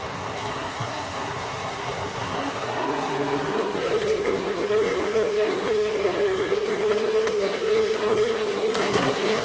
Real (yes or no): no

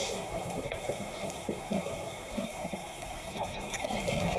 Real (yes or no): no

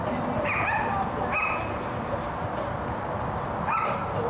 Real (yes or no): yes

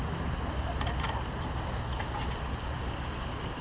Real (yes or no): yes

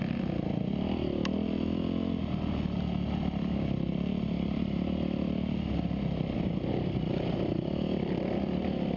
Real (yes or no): yes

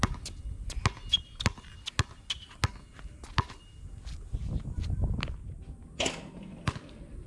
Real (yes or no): yes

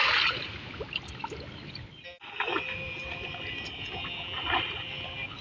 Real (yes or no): yes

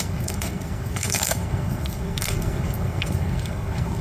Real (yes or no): no